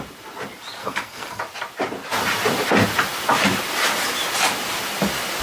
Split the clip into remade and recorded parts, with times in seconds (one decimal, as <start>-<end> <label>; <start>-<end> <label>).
0.0-0.8 recorded; 0.8-1.4 remade; 1.4-5.4 recorded